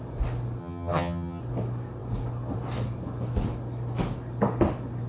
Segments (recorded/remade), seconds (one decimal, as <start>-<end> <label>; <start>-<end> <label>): 0.0-0.6 recorded; 0.6-1.4 remade; 1.4-5.1 recorded